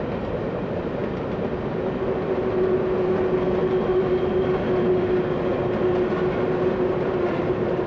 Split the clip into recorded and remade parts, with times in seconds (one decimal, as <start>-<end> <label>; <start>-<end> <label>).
0.0-7.9 recorded